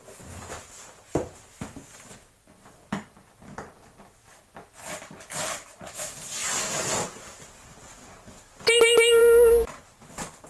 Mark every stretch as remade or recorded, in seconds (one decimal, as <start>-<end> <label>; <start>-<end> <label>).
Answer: 0.0-10.5 recorded